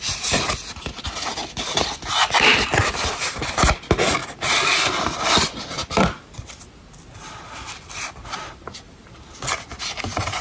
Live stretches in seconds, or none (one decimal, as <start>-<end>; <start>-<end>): 0.0-10.4